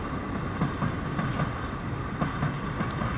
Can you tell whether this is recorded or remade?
recorded